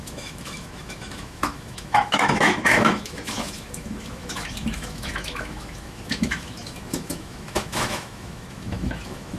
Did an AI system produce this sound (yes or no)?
yes